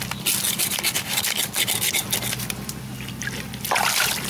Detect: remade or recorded recorded